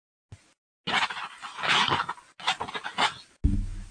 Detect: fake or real real